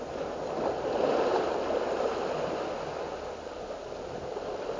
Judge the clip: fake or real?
real